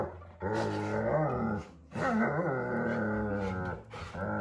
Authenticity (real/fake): real